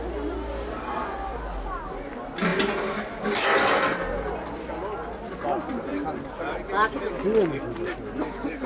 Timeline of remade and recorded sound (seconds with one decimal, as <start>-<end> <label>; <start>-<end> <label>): 0.0-8.7 recorded